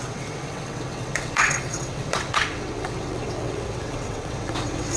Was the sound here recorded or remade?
remade